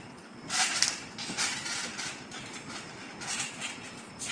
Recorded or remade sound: recorded